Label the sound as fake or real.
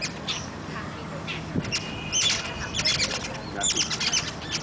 real